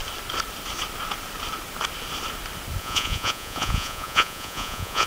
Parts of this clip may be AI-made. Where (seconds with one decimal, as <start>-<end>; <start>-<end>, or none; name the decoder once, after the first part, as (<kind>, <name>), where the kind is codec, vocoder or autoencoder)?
2.8-5.1 (vocoder, Vocos)